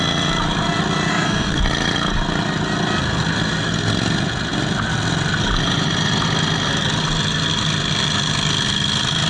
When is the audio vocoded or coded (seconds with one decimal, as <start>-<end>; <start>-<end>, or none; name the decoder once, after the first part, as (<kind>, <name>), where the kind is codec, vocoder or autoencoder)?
1.1-1.6 (codec, SNAC)